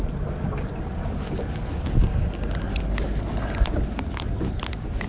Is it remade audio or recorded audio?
recorded